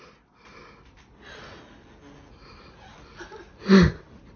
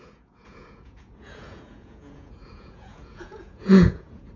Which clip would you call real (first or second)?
first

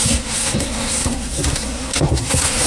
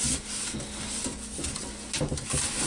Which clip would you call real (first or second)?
second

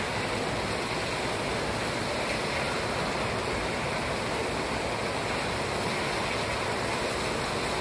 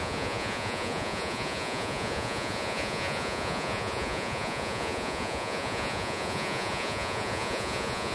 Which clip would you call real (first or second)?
first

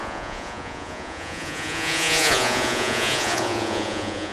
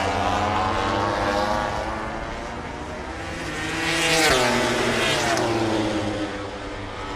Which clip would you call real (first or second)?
second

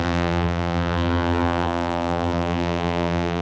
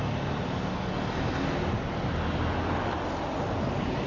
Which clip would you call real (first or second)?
second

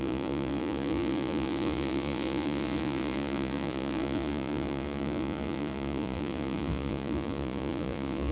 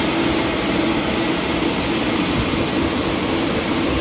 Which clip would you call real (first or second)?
second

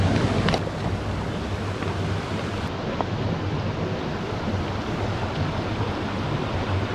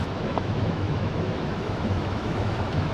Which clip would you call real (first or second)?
first